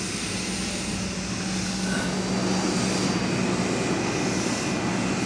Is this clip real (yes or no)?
yes